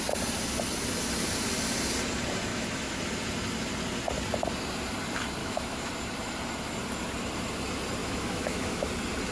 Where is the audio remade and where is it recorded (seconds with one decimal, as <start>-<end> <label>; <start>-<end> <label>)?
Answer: 0.0-2.5 recorded; 2.5-3.0 remade; 3.0-5.4 recorded; 5.4-5.9 remade; 5.9-8.0 recorded; 8.0-8.9 remade; 8.9-9.3 recorded